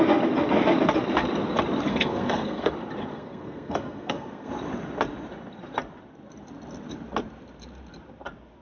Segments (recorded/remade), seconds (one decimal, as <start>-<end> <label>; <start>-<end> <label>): 0.0-1.9 recorded; 1.9-2.7 remade; 2.7-3.1 recorded; 3.1-4.5 remade; 4.5-8.6 recorded